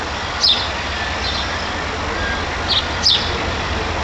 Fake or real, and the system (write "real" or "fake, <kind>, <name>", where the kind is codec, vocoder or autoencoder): real